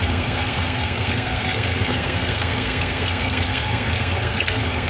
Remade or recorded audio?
remade